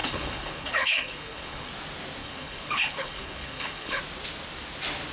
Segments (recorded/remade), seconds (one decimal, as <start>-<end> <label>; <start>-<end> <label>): 0.0-1.7 remade; 1.7-2.2 recorded; 2.2-4.0 remade; 4.0-5.1 recorded